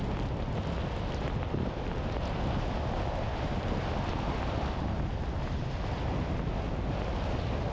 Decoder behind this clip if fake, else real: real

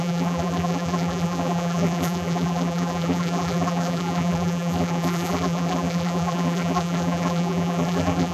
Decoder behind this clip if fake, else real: fake, vocoder, BigVGAN v2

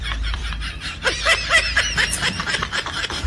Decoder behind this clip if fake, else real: fake, vocoder, BigVGAN v2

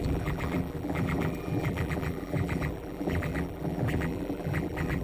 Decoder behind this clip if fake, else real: fake, vocoder, BigVGAN v2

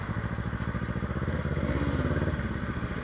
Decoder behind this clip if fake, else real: real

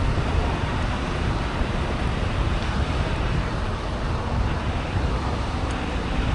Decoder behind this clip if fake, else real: fake, vocoder, BigVGAN v2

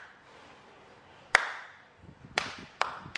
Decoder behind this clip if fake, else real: fake, vocoder, BigVGAN v2